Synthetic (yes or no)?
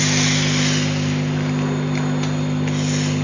no